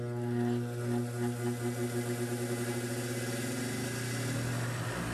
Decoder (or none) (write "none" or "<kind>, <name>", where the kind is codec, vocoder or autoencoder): none